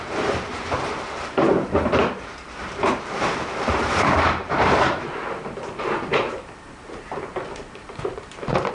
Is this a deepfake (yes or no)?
yes